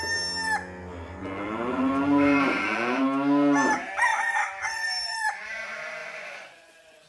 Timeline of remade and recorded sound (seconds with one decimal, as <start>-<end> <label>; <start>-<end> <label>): 0.0-1.2 recorded; 1.2-3.0 remade; 3.0-4.1 recorded; 4.1-5.6 remade; 5.6-6.0 recorded; 6.0-7.1 remade